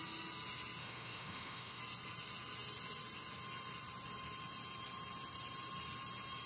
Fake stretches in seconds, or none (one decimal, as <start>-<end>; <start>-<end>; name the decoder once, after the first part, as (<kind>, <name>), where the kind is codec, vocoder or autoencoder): 0.8-1.8 (autoencoder, DAC-VAE)